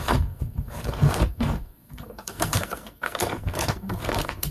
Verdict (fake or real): fake